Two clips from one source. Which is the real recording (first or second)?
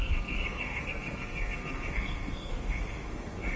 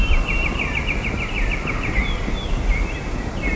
second